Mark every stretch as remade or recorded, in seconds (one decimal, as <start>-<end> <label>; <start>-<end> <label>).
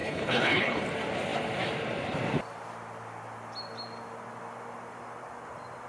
0.0-0.8 remade; 0.8-5.9 recorded